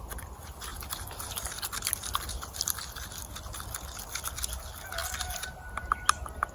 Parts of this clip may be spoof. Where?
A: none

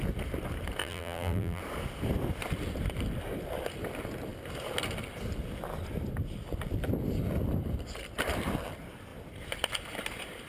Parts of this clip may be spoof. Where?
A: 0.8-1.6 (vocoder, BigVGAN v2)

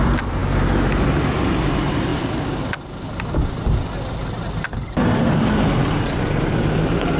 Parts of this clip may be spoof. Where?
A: 0.0-0.4 (vocoder, BigVGAN v2); 1.5-2.1; 6.4-7.2

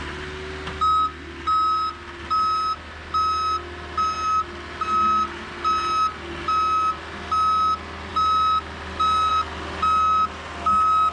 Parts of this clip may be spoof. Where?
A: none

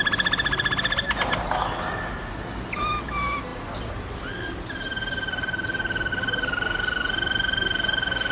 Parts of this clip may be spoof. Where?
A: none

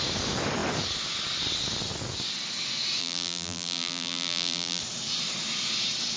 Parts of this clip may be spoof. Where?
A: 3.0-4.8 (vocoder, BigVGAN v2)

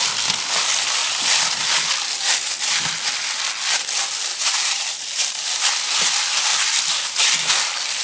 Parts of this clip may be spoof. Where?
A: 4.3-5.5 (vocoder, BigVGAN v2); 6.5-7.5